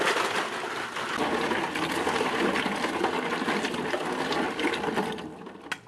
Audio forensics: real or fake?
real